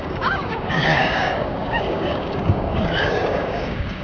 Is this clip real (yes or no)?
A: no